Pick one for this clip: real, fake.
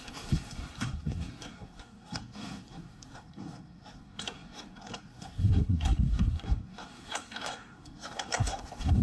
fake